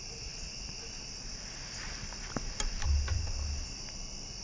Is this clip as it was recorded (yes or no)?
yes